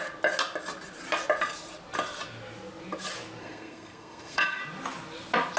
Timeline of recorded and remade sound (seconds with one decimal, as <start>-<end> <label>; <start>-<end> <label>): 0.0-3.4 recorded; 3.4-4.6 remade; 4.6-5.6 recorded